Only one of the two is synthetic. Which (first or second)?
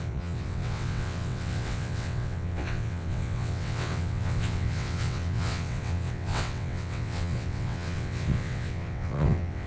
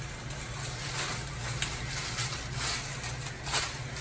first